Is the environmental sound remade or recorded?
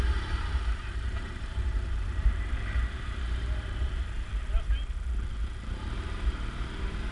remade